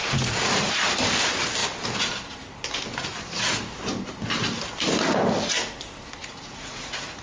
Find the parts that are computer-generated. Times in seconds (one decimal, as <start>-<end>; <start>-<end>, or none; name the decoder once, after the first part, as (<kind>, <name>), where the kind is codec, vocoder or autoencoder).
0.0-0.7 (vocoder, Vocos); 6.2-7.2